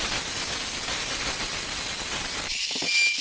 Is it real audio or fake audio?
real